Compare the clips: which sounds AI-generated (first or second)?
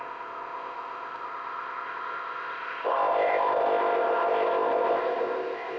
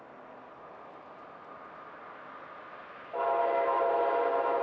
first